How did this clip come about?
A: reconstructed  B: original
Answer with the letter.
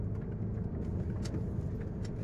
B